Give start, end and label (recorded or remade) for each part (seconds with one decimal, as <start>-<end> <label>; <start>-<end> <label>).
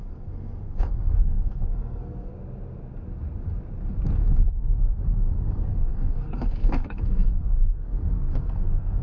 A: 0.0-2.3 remade; 2.3-4.5 recorded; 4.5-9.0 remade